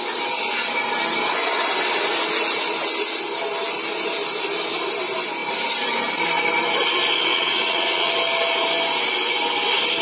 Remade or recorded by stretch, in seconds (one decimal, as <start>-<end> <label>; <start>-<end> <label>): 0.0-7.3 recorded; 7.3-8.1 remade; 8.1-10.0 recorded

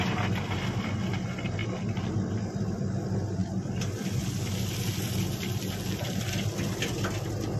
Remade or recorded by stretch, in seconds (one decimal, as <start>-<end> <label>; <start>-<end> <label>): 0.0-3.4 recorded; 3.4-5.6 remade; 5.6-7.6 recorded

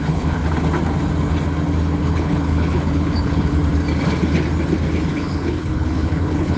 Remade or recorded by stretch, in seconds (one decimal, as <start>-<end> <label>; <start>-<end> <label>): 0.0-0.4 remade; 0.4-2.0 recorded; 2.0-3.6 remade; 3.6-5.1 recorded; 5.1-6.6 remade

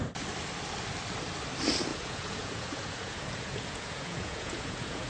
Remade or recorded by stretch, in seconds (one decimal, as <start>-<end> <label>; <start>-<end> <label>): 0.0-1.9 recorded; 1.9-5.1 remade